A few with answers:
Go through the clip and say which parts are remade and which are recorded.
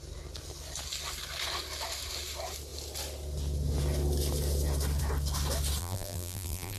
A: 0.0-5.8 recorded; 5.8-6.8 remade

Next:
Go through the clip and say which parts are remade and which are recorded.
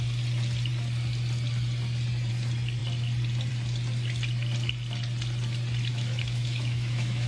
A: 0.0-5.9 recorded; 5.9-7.3 remade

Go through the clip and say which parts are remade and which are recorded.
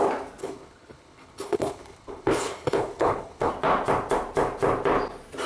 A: 0.0-0.4 recorded; 0.4-3.5 remade; 3.5-5.5 recorded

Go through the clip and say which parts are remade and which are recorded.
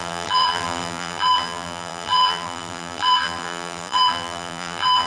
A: 0.0-5.1 remade